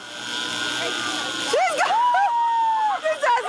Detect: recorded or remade recorded